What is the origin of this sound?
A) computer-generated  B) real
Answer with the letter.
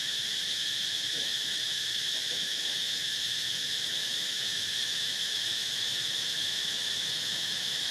A